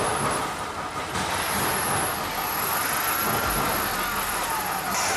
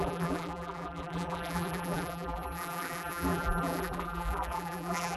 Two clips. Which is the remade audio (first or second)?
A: second